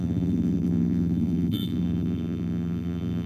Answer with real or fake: fake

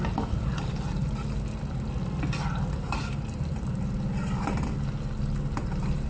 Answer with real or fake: real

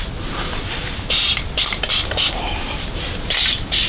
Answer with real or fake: fake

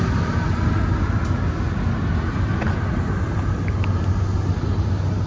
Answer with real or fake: real